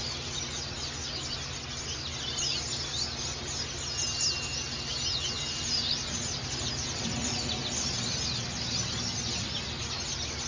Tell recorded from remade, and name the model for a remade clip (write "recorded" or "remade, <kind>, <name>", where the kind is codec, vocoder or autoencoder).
recorded